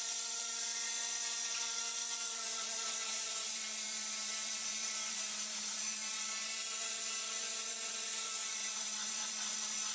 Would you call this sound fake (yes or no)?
yes